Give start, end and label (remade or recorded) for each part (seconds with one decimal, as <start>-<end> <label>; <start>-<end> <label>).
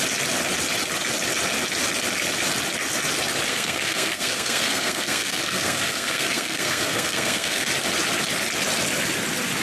0.0-3.5 recorded; 3.5-7.7 remade; 7.7-9.6 recorded